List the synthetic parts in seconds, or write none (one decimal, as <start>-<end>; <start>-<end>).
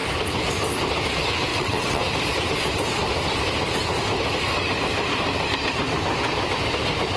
1.5-2.0